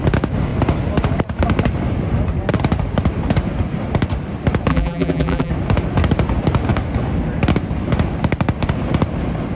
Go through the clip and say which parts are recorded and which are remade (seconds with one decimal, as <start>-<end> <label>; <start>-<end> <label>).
0.0-4.7 recorded; 4.7-5.5 remade; 5.5-9.5 recorded